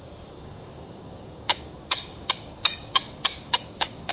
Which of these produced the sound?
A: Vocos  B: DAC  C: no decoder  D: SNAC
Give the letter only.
B